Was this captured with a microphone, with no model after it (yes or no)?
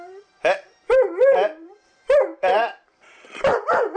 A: no